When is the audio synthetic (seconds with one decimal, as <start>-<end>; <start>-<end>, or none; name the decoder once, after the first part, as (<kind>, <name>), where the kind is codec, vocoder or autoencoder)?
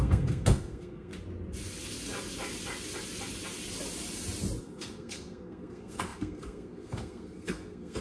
0.0-1.1 (codec, SNAC); 4.6-8.0